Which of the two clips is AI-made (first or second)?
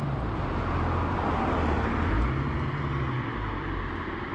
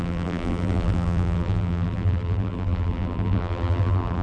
second